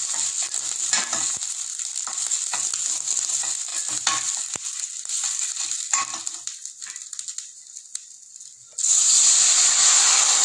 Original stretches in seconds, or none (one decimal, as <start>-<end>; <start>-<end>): 0.0-10.4